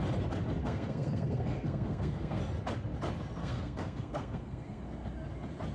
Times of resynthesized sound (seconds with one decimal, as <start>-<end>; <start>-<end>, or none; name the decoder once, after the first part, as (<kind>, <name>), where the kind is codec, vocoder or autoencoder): 0.6-2.4 (codec, SNAC); 3.4-4.8